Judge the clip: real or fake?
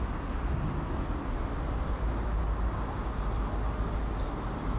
real